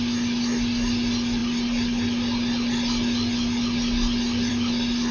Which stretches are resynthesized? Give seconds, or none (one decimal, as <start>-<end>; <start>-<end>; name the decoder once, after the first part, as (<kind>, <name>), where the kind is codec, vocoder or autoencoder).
none

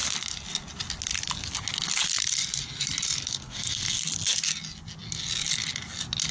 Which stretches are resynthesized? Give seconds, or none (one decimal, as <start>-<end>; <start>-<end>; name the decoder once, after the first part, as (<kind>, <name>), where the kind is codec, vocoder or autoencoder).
3.3-4.0 (codec, SNAC)

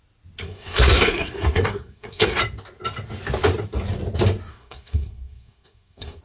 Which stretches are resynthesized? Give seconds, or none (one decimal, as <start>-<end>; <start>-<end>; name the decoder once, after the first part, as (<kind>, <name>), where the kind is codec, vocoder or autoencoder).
0.4-2.4 (codec, SNAC); 4.5-6.2

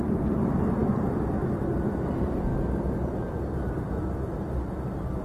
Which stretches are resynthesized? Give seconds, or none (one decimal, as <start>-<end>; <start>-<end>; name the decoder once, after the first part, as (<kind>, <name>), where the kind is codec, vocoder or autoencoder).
none

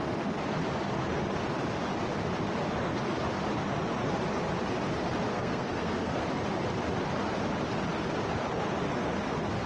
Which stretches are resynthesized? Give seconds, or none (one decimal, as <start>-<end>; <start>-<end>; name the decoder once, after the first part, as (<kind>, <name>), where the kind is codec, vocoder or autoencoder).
5.3-6.2 (codec, SNAC)

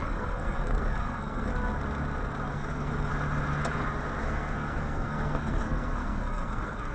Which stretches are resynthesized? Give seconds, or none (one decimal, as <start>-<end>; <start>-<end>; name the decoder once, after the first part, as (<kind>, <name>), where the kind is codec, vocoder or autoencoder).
0.0-1.5 (codec, SNAC); 2.5-3.1; 4.2-6.9

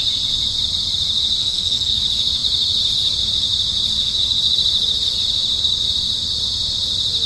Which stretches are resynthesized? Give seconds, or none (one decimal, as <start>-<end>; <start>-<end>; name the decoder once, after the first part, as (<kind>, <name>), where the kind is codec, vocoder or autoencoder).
1.4-2.0 (codec, SNAC)

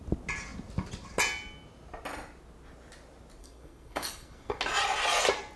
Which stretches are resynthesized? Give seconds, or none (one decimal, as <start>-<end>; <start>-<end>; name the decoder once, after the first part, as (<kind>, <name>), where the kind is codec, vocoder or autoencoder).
3.4-4.6 (codec, SNAC)